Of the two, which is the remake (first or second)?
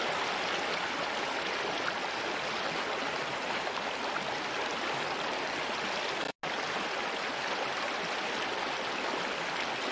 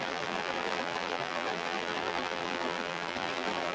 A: second